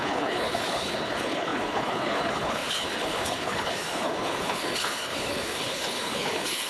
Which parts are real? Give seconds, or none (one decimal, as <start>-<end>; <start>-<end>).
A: none